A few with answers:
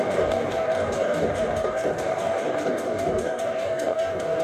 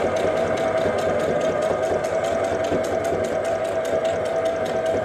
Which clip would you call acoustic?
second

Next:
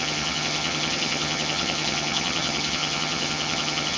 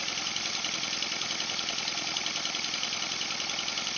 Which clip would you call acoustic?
second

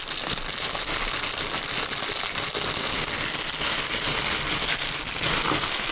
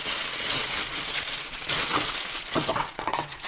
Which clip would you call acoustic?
first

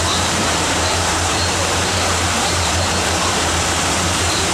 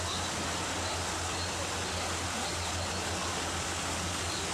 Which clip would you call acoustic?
second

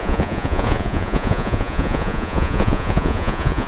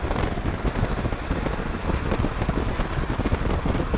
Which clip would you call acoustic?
second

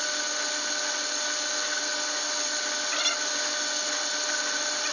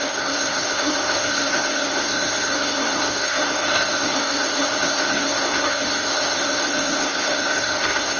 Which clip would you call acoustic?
first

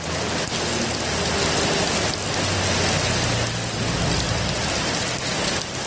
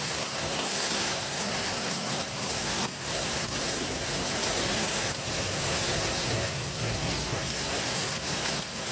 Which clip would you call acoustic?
first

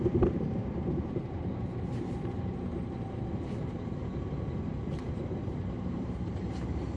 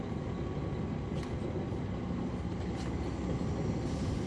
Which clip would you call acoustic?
second